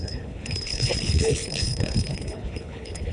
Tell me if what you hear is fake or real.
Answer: fake